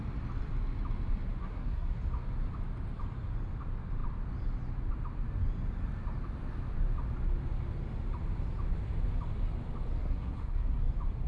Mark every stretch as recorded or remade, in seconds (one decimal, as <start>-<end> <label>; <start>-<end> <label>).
0.0-1.4 recorded; 1.4-2.0 remade; 2.0-10.0 recorded; 10.0-10.8 remade; 10.8-11.3 recorded

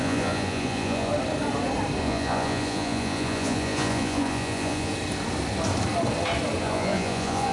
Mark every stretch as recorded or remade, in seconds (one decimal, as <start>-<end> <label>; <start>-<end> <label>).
0.0-1.1 remade; 1.1-2.0 recorded; 2.0-4.9 remade; 4.9-6.6 recorded; 6.6-7.5 remade